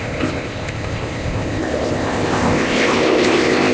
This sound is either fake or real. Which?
fake